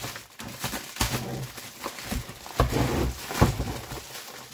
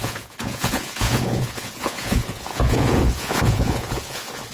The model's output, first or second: second